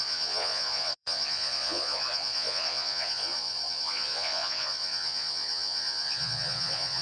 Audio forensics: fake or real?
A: fake